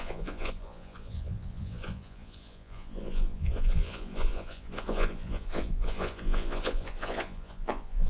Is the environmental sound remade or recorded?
remade